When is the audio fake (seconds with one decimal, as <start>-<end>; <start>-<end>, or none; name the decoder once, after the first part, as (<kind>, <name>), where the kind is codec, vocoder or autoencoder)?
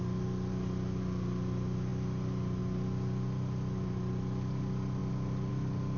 none